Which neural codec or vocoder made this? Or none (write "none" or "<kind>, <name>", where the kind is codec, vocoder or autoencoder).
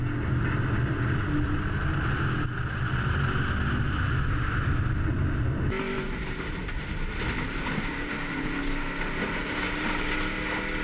none